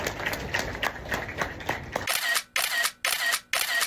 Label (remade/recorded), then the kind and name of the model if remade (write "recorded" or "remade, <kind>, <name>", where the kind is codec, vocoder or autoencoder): recorded